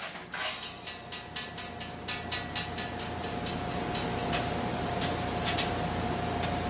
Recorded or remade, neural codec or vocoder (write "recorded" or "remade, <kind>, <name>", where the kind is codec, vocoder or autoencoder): recorded